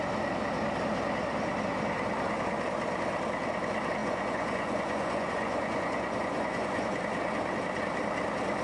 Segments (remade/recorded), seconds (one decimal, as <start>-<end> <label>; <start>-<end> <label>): 0.0-4.0 recorded; 4.0-7.0 remade; 7.0-8.6 recorded

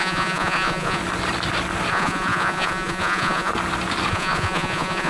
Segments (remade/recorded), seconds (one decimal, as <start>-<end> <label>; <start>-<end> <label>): 0.0-1.0 remade; 1.0-1.9 recorded; 1.9-3.5 remade; 3.5-4.1 recorded; 4.1-5.1 remade

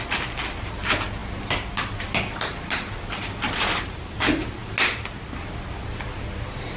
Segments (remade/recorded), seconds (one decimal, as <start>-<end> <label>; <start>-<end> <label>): 0.0-6.8 recorded

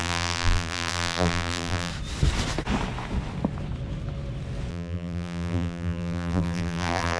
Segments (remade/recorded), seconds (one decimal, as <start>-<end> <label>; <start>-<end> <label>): 0.0-1.9 remade; 1.9-4.7 recorded; 4.7-7.2 remade

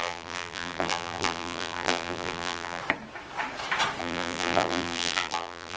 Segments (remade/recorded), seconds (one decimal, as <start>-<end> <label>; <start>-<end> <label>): 0.0-2.8 remade; 2.8-4.0 recorded; 4.0-5.8 remade

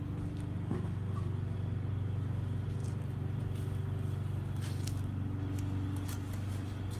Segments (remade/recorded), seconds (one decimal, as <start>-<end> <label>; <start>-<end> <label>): 0.0-2.8 recorded; 2.8-3.5 remade; 3.5-7.0 recorded